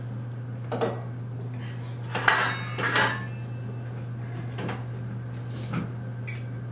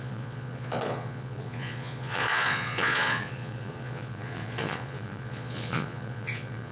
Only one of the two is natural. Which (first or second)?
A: first